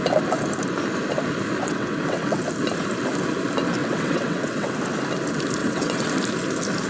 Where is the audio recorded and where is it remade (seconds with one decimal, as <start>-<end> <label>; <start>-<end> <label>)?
0.0-1.6 recorded; 1.6-2.4 remade; 2.4-3.8 recorded; 3.8-4.8 remade; 4.8-5.6 recorded; 5.6-6.1 remade; 6.1-6.9 recorded